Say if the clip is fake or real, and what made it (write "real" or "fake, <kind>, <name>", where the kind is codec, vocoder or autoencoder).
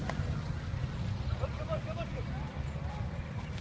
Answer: real